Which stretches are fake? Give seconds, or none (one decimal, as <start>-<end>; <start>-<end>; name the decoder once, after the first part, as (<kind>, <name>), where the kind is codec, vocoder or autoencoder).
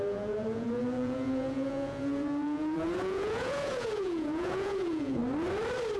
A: 0.0-5.2 (vocoder, Vocos)